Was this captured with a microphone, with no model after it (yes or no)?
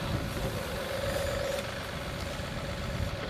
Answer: yes